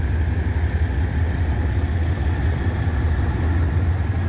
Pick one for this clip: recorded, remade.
recorded